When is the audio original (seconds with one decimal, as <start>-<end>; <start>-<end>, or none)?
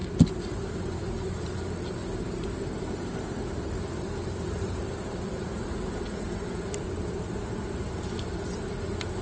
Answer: 0.0-2.0; 7.2-9.2